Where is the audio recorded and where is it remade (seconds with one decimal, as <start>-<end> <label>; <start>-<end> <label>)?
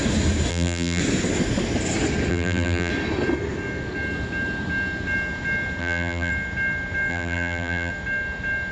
0.0-0.5 recorded; 0.5-1.0 remade; 1.0-2.3 recorded; 2.3-2.9 remade; 2.9-5.8 recorded; 5.8-6.3 remade; 6.3-7.1 recorded; 7.1-7.9 remade; 7.9-8.7 recorded